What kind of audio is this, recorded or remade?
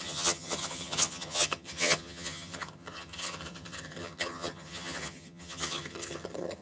remade